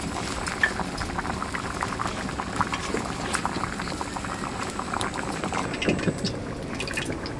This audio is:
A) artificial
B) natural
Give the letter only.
B